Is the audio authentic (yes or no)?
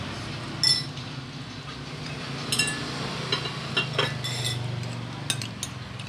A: yes